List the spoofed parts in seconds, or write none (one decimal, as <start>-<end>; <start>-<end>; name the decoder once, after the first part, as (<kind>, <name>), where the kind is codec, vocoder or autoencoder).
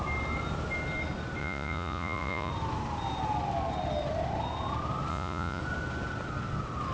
1.4-2.5 (vocoder, Vocos); 5.1-5.6